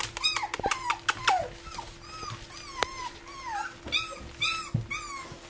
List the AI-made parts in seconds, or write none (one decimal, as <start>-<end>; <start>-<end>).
none